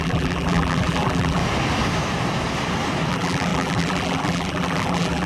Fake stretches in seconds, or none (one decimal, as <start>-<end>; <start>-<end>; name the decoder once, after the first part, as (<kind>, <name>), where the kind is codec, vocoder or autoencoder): 0.0-1.4 (vocoder, BigVGAN v2); 3.1-5.3